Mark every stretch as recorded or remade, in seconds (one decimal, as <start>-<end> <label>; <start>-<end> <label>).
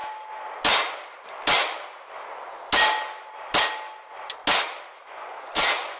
0.0-4.9 recorded; 4.9-6.0 remade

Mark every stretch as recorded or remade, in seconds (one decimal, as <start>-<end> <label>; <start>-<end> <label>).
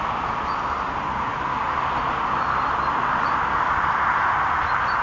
0.0-5.0 recorded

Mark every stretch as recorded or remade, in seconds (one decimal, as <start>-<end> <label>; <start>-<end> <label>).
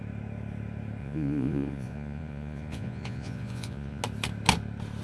0.0-1.0 recorded; 1.0-4.0 remade; 4.0-5.0 recorded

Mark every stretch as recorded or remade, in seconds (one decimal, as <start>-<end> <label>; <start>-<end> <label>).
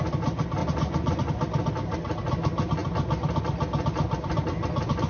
0.0-0.6 recorded; 0.6-1.3 remade; 1.3-5.1 recorded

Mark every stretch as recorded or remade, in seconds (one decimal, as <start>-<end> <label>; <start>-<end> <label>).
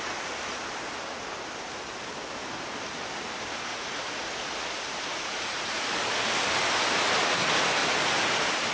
0.0-3.7 recorded; 3.7-4.3 remade; 4.3-5.1 recorded; 5.1-5.8 remade; 5.8-8.7 recorded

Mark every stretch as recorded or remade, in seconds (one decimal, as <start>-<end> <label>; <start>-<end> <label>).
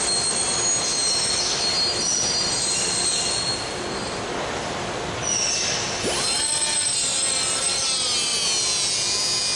0.0-9.6 recorded